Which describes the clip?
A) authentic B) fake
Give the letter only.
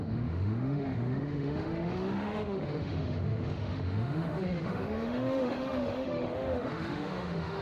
B